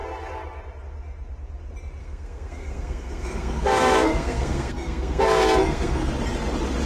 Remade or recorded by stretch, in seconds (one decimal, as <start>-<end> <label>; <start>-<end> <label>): 0.0-2.0 recorded; 2.0-6.1 remade; 6.1-6.9 recorded